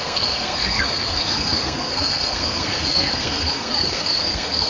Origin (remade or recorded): remade